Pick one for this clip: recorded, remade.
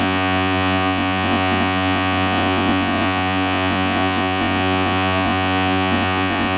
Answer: remade